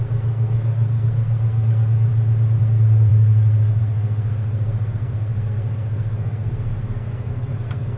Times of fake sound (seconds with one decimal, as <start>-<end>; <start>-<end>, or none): 0.0-2.1; 2.6-8.0